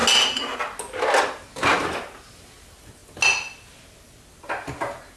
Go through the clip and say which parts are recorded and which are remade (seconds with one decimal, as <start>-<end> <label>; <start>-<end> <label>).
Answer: 0.0-5.2 recorded